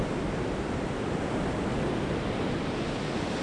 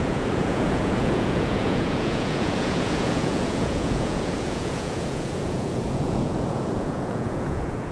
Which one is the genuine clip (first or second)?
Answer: first